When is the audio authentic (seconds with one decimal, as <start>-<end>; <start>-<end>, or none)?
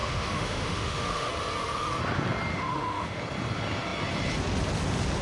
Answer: 1.3-2.5; 3.2-5.2